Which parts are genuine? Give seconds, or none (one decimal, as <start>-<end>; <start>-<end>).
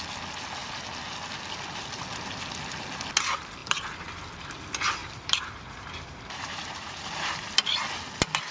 0.0-5.0; 7.5-8.5